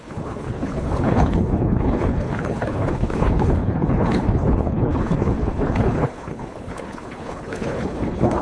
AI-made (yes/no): yes